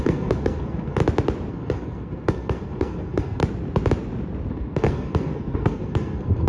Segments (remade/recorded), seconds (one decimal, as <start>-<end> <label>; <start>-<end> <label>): 0.0-1.0 remade; 1.0-1.5 recorded; 1.5-3.4 remade; 3.4-4.5 recorded; 4.5-6.5 remade